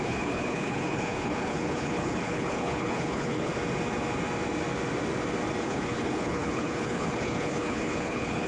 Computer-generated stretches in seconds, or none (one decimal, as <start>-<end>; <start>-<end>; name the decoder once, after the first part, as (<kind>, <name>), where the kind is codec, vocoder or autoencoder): 0.0-3.5 (codec, HILCodec); 5.6-8.5